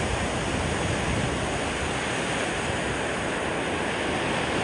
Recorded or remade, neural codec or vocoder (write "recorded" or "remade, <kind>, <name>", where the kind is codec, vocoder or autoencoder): recorded